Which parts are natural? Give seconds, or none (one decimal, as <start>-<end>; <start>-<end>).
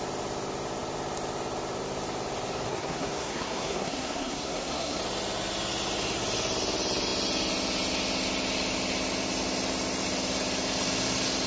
0.0-2.7; 5.0-11.5